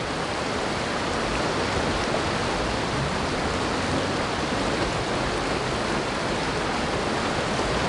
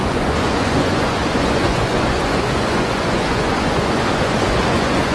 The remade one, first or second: second